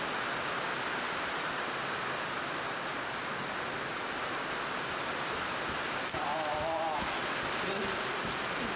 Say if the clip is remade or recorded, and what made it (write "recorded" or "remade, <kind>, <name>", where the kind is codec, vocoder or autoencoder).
recorded